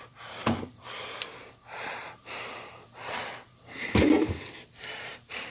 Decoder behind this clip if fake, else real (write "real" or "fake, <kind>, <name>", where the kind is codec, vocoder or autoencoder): fake, vocoder, BigVGAN v2